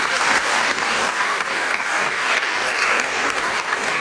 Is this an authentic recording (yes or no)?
no